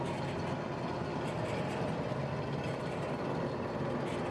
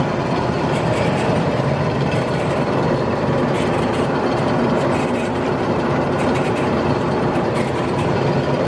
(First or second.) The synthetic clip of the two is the second